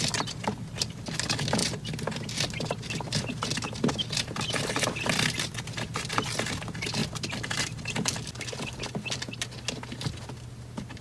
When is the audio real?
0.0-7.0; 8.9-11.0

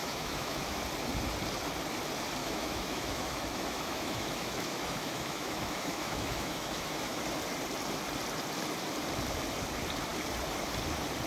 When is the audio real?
0.8-2.4; 7.2-11.3

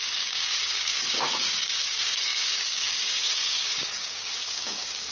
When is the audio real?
none

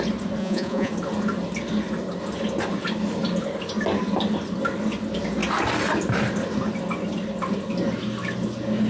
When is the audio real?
0.0-0.4; 0.9-8.9

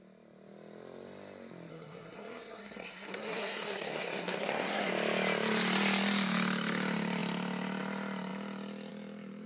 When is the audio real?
0.0-1.7; 4.9-9.5

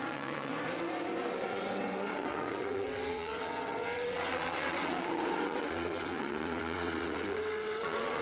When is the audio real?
0.5-1.3

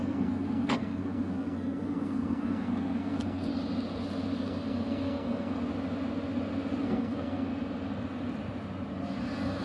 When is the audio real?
3.5-4.4; 5.6-6.8; 7.5-9.6

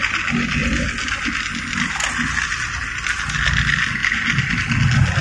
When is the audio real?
0.0-0.6; 1.3-4.0; 4.5-5.2